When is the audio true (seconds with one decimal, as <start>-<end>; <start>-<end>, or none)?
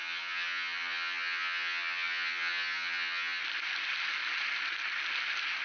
3.4-5.6